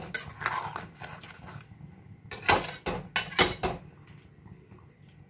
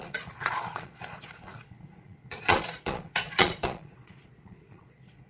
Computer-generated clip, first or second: second